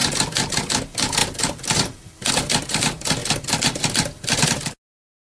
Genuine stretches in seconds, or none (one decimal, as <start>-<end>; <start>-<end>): 0.0-1.2; 2.3-3.2; 3.8-5.2